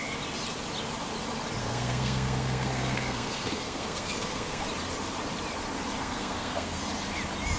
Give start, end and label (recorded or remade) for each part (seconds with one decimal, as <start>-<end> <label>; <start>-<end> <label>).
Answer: 0.0-1.6 recorded; 1.6-4.6 remade; 4.6-6.0 recorded; 6.0-6.8 remade; 6.8-7.6 recorded